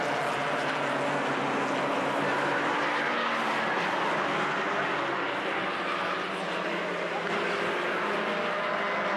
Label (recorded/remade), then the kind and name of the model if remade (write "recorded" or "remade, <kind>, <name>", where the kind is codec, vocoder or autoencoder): recorded